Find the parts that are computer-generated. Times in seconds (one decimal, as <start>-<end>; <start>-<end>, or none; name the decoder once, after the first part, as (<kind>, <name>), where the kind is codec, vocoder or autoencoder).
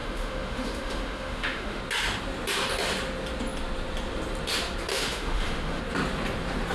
0.0-1.8 (autoencoder, DAC-VAE); 4.9-5.8